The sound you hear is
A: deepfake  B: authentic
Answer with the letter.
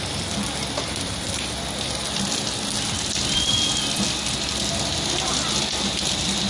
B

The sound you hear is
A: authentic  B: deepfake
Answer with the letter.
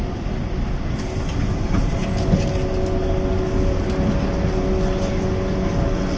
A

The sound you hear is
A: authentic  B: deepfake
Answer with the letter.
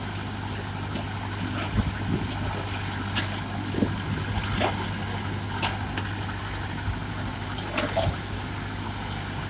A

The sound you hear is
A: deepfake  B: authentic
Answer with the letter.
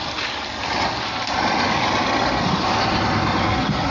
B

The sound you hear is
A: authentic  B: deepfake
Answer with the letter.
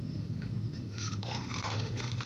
B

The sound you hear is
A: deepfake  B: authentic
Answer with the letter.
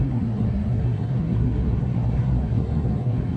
A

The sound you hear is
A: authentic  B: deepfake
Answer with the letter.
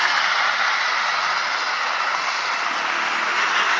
A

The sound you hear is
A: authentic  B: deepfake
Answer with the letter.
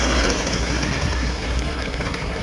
B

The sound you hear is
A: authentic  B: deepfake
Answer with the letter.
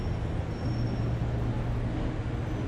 A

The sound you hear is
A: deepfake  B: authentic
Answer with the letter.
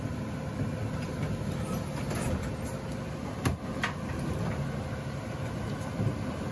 B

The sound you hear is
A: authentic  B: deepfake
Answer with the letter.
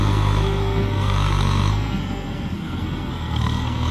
B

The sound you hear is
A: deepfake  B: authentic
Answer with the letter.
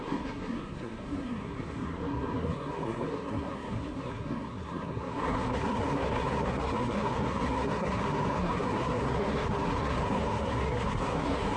A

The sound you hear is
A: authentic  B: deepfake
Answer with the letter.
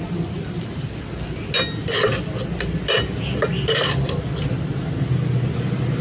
A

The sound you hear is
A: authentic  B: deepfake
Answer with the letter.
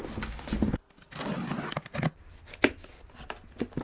A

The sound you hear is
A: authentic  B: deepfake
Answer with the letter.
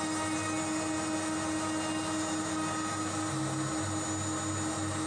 A